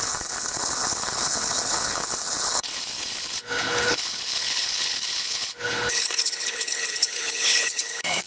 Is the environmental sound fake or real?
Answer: fake